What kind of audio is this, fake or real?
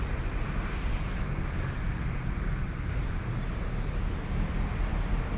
real